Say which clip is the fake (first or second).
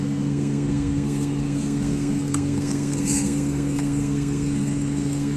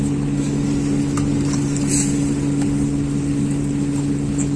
first